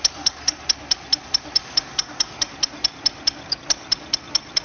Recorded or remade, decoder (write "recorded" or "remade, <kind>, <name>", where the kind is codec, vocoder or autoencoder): recorded